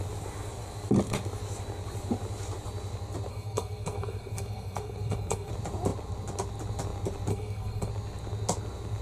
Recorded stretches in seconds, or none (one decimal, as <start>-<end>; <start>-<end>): 0.0-3.3; 5.5-7.3; 7.9-9.0